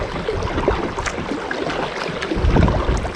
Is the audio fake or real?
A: real